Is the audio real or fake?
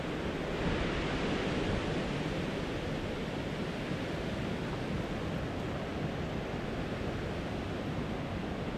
real